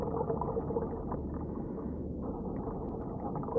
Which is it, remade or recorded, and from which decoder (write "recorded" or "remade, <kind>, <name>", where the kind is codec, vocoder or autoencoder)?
recorded